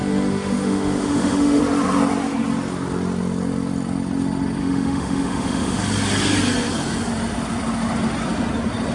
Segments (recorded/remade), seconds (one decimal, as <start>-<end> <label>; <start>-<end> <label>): 0.0-1.6 remade; 1.6-4.6 recorded; 4.6-5.8 remade; 5.8-8.9 recorded